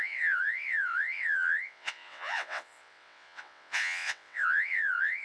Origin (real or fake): fake